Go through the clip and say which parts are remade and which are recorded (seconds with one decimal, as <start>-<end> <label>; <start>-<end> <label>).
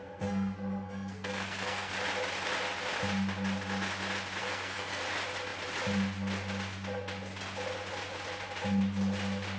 0.0-1.9 remade; 1.9-4.4 recorded; 4.4-5.0 remade; 5.0-9.6 recorded